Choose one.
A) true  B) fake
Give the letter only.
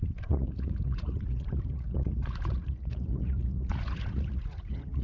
B